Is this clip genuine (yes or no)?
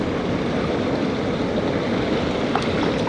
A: yes